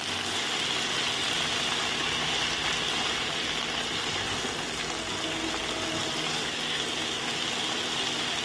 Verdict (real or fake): real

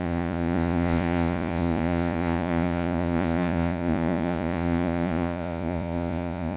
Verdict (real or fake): fake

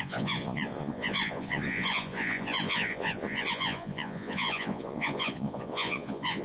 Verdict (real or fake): fake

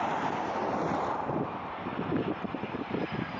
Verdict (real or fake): fake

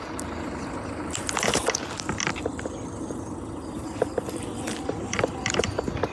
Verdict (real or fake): real